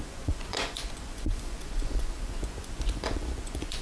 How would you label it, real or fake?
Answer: fake